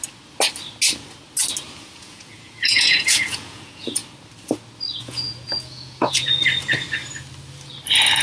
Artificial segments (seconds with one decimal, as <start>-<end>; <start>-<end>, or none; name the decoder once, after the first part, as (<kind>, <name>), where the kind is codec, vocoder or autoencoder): 1.8-4.0 (vocoder, Vocos); 5.0-6.4